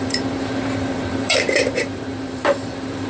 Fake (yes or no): yes